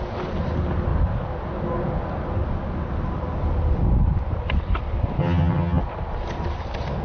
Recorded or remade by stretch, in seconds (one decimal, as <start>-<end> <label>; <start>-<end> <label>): 0.0-5.2 recorded; 5.2-5.8 remade; 5.8-7.0 recorded